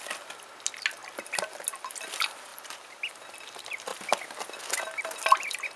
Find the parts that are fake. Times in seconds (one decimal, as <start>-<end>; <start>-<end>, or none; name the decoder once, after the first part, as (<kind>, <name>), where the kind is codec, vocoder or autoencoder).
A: 2.5-3.1 (vocoder, BigVGAN v2)